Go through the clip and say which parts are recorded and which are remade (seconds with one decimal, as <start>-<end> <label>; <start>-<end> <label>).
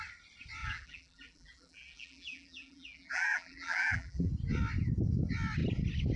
0.0-0.6 recorded; 0.6-4.3 remade; 4.3-6.2 recorded